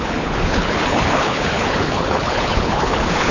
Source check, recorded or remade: remade